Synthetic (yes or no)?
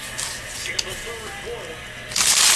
no